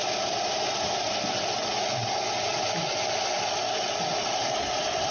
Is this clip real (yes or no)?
yes